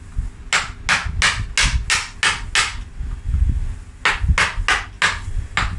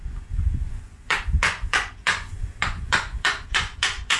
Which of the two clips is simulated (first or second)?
second